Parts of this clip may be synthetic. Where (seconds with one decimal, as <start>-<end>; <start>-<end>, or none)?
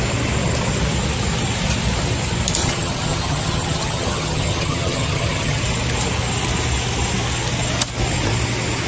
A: 2.6-5.6